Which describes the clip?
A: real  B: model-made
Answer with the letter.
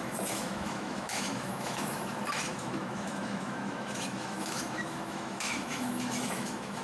B